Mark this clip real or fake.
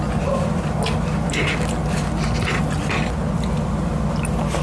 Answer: real